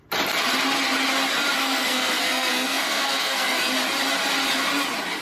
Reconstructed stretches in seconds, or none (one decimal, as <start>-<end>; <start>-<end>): 1.6-3.6